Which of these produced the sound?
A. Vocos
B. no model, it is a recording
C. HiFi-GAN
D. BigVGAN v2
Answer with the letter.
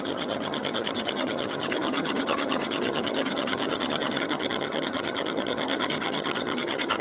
C